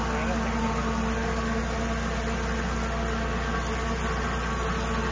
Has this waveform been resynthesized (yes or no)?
no